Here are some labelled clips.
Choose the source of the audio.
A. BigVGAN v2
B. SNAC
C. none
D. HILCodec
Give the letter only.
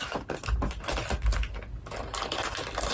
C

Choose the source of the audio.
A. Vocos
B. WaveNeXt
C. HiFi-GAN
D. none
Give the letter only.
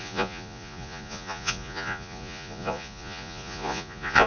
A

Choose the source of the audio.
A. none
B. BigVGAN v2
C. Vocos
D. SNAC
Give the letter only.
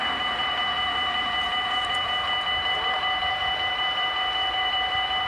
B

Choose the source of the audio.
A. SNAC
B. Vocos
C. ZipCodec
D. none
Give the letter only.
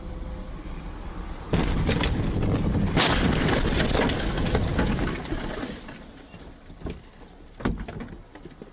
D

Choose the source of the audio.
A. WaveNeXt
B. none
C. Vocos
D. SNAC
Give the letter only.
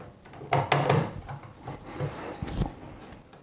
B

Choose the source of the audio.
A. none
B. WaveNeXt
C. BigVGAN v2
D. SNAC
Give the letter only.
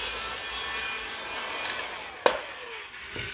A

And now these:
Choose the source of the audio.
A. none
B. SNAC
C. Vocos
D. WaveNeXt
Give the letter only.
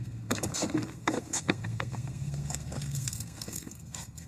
B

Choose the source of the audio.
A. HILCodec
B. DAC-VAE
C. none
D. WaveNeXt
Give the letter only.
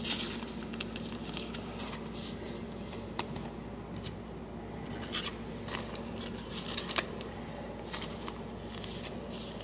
C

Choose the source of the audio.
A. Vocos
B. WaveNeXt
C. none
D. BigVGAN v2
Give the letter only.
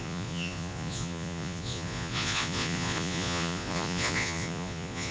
A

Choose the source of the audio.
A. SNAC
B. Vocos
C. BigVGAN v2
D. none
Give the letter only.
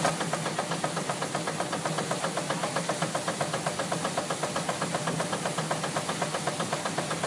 D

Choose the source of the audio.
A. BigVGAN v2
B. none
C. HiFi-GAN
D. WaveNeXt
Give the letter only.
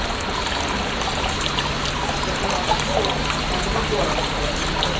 B